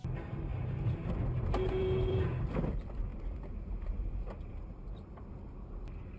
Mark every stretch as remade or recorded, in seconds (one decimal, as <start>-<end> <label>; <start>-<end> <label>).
0.0-1.8 recorded; 1.8-2.4 remade; 2.4-6.2 recorded